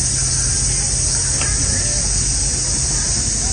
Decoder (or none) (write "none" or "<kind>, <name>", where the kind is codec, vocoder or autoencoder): none